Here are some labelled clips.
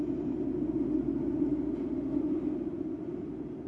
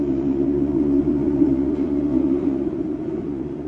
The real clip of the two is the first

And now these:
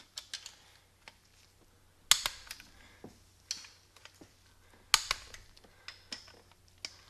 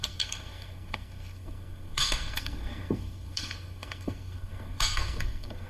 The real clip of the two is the first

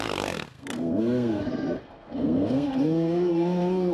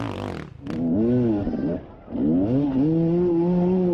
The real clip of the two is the second